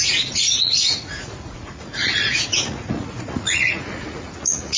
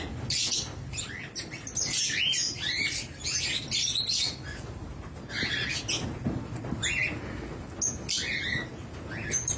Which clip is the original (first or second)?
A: second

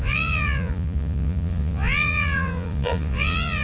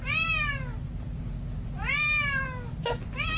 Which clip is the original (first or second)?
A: second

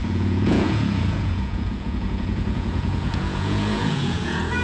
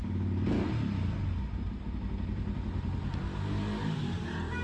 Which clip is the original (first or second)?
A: second